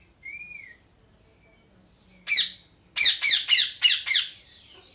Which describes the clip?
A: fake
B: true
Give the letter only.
B